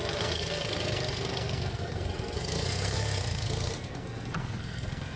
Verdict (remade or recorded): remade